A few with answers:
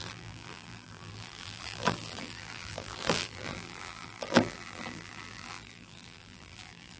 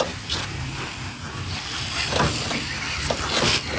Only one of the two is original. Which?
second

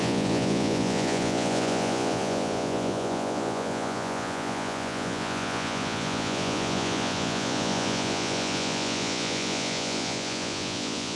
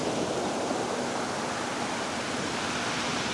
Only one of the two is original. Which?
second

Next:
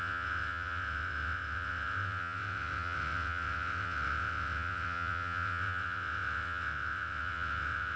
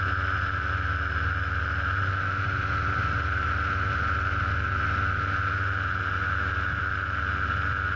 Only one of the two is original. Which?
second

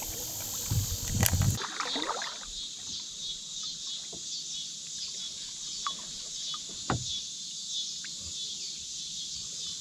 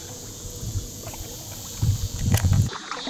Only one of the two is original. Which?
first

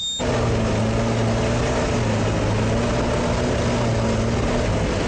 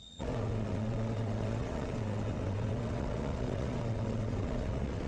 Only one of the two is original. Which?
first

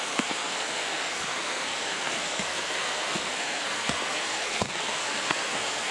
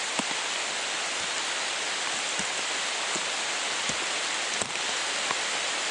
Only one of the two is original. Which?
second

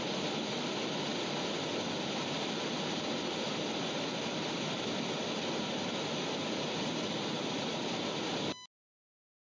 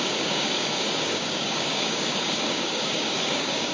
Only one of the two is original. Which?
first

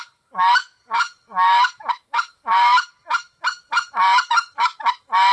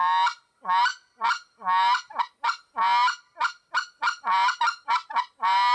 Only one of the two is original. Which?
second